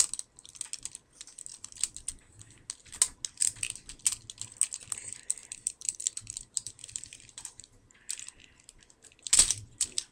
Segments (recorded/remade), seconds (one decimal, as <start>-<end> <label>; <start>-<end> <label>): 0.0-5.4 recorded; 5.4-8.4 remade; 8.4-10.1 recorded